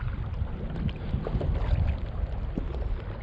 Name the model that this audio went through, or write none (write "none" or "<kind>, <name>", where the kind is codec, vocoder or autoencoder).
none